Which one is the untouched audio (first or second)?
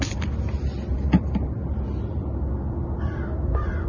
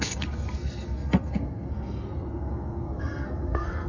first